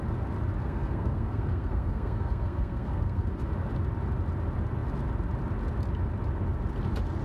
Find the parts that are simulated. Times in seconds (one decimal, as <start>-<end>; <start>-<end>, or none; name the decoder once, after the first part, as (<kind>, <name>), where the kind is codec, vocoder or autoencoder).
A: 0.6-3.5 (codec, SNAC)